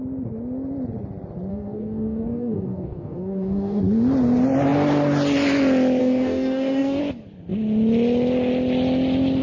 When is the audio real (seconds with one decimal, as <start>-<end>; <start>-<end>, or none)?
0.0-1.5; 3.8-6.0; 7.0-9.4